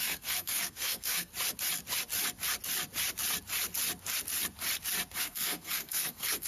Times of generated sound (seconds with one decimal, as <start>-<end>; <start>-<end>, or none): 0.0-1.3; 5.2-6.5